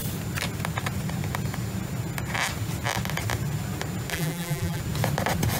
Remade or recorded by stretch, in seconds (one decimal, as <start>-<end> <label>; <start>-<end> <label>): 0.0-4.1 recorded; 4.1-4.8 remade; 4.8-5.6 recorded